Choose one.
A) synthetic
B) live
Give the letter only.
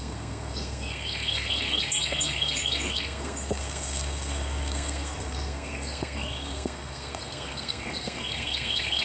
A